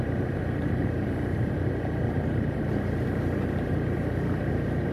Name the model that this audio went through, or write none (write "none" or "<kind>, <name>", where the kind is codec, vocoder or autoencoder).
vocoder, BigVGAN v2